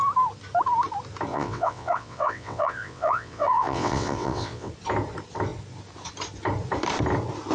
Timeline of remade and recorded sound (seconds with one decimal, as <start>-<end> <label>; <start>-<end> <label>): 0.0-1.3 recorded; 1.3-4.7 remade; 4.7-7.5 recorded